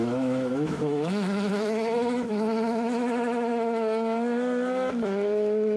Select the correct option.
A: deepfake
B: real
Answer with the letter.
A